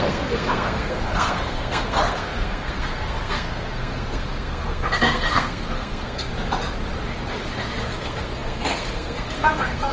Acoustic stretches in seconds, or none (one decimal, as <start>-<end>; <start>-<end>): 6.3-8.0